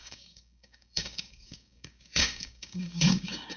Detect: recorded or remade remade